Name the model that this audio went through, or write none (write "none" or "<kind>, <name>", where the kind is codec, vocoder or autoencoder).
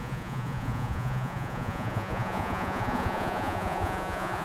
vocoder, Vocos